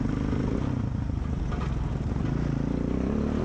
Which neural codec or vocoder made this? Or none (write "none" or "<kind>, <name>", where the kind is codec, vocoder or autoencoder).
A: none